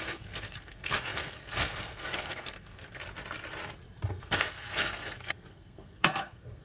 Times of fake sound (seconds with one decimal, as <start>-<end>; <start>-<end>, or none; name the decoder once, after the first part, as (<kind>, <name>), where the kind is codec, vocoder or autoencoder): 0.0-3.0 (codec, SNAC); 4.1-6.6